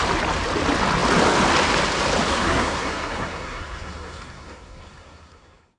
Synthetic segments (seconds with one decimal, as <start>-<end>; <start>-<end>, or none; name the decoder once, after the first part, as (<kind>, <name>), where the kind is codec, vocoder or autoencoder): 2.3-5.8 (codec, SNAC)

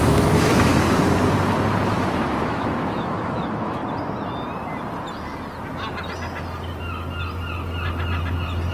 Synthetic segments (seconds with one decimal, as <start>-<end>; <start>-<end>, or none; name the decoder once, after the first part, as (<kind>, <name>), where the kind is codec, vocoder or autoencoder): 0.0-0.7 (autoencoder, DAC-VAE); 2.0-3.8

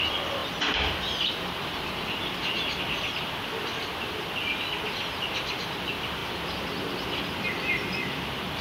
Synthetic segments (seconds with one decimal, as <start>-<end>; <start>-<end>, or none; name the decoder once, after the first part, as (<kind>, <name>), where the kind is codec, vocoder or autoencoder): none

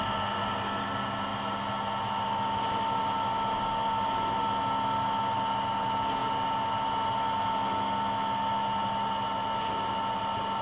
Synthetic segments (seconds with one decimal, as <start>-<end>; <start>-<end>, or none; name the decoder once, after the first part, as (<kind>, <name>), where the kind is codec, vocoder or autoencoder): none

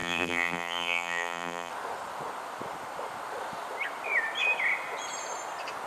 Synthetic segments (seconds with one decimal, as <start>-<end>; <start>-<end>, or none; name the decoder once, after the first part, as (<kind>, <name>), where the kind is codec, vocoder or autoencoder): 0.0-1.7 (vocoder, BigVGAN v2)

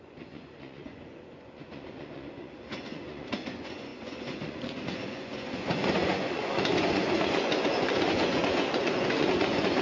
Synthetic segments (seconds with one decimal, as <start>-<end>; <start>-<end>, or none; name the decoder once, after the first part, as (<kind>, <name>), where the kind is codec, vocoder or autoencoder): 0.0-9.8 (vocoder, Vocos)